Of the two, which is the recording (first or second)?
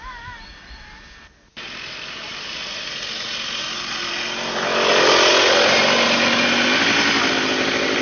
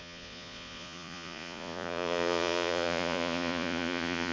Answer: first